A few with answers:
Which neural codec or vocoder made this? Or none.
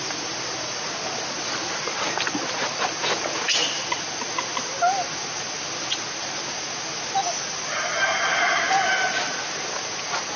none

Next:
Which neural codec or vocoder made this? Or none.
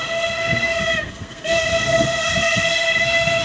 codec, SNAC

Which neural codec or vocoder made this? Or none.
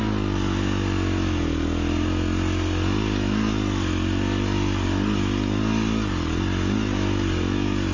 none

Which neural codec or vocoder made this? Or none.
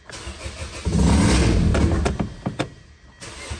none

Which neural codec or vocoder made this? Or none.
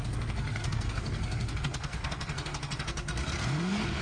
codec, SNAC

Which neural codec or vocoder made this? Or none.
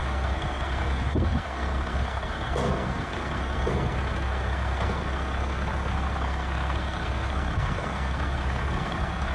codec, SNAC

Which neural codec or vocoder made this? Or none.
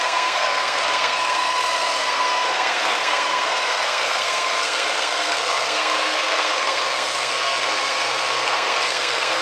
codec, SNAC